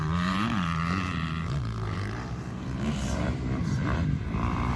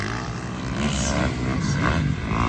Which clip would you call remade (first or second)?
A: first